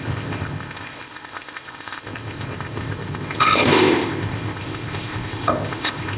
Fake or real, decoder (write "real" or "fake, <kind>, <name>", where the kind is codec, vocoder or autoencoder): fake, codec, ZipCodec